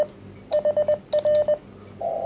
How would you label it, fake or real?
real